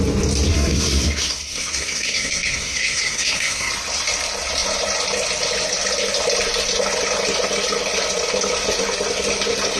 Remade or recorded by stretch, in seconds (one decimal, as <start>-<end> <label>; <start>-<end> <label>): 0.0-0.5 recorded; 0.5-3.7 remade; 3.7-9.8 recorded